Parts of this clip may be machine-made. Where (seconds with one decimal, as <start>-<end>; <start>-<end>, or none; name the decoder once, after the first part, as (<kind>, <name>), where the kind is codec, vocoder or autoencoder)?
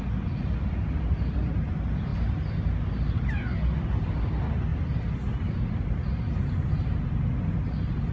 none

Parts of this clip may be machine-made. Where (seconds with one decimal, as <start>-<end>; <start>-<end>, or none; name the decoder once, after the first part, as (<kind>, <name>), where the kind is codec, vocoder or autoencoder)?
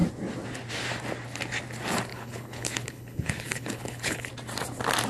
2.1-4.3 (codec, HILCodec)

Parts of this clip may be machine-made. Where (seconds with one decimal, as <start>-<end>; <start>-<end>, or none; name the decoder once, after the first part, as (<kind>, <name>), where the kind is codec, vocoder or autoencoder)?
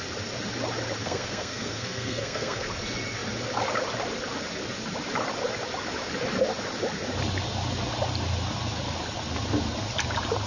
1.0-2.7 (codec, SNAC)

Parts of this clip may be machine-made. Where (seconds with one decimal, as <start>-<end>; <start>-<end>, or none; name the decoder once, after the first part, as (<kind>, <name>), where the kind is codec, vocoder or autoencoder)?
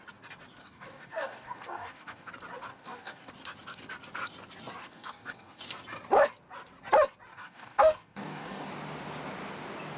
0.6-2.3 (codec, DAC); 2.7-3.3; 4.8-5.6; 7.3-8.7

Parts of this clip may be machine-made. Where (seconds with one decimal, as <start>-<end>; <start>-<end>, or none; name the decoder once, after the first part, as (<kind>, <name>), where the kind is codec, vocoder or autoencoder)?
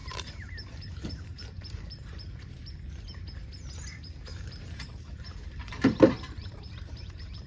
0.0-2.8 (vocoder, BigVGAN v2); 4.3-7.5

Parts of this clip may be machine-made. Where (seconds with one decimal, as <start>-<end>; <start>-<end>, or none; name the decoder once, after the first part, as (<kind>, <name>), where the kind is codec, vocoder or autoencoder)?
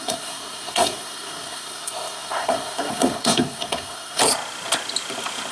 0.0-4.2 (codec, SNAC)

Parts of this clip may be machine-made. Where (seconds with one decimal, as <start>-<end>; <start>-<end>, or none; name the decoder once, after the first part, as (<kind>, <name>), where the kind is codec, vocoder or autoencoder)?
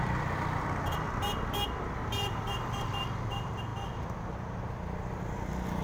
none